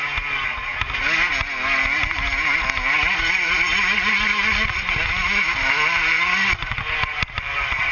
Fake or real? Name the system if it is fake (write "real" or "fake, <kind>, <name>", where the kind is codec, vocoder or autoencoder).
real